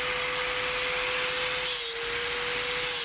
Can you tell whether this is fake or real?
real